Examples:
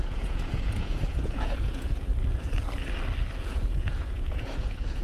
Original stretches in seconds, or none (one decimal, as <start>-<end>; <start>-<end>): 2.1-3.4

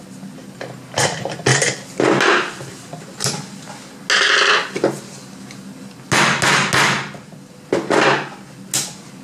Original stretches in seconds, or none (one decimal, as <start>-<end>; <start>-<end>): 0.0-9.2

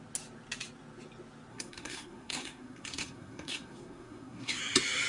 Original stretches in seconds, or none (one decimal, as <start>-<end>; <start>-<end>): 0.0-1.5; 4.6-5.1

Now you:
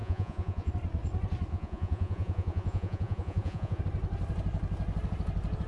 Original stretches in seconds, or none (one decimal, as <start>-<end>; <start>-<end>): 0.7-1.5; 3.8-5.7

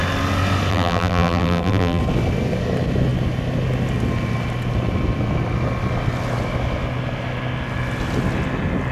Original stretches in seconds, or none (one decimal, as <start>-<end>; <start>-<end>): 0.0-0.7; 2.0-8.9